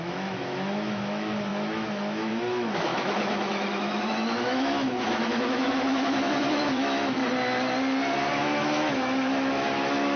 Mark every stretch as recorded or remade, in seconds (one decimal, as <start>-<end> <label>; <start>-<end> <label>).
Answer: 0.0-7.2 remade; 7.2-8.3 recorded; 8.3-10.2 remade